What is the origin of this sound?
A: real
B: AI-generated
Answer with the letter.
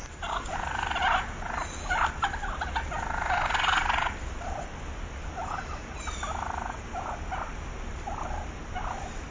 A